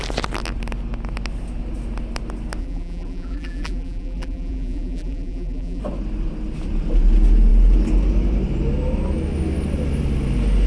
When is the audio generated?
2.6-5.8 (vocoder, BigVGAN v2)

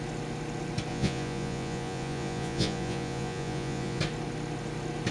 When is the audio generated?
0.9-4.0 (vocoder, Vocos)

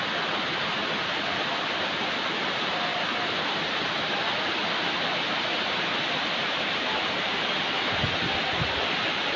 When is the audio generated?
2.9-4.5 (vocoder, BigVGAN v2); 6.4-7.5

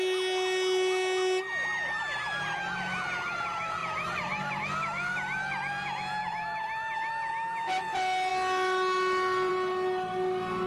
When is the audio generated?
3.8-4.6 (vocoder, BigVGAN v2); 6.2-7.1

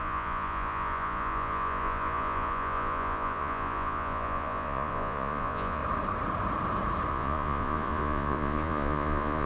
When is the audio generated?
0.0-5.8 (vocoder, Vocos); 7.1-9.5

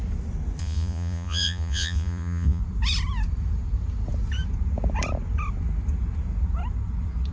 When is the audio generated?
0.6-2.6 (vocoder, Vocos)

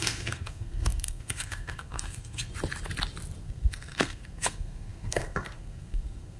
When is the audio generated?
0.0-2.5 (codec, SNAC); 3.4-6.4

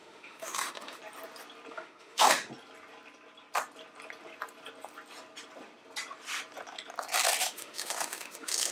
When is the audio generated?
0.0-1.0 (autoencoder, DAC-VAE); 1.7-2.5; 7.4-8.7